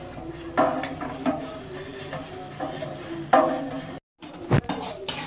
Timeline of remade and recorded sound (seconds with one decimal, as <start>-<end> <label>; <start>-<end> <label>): 0.0-5.3 recorded